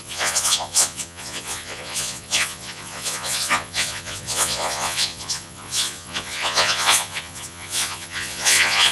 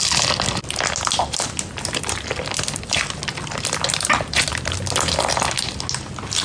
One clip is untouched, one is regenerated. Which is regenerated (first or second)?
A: first